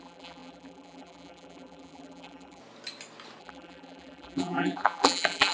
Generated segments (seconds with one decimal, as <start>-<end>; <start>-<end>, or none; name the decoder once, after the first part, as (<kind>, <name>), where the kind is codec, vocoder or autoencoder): 0.0-2.6 (vocoder, BigVGAN v2); 3.4-5.5